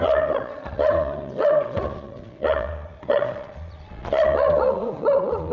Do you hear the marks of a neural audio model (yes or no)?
yes